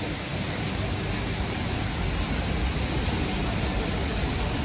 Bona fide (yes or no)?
yes